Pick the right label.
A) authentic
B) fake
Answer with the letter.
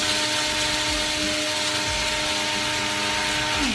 A